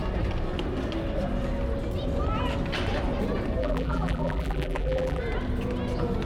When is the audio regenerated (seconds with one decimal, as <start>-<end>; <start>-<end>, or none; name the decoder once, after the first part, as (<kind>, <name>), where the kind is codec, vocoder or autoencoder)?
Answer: 3.6-5.2 (vocoder, BigVGAN v2)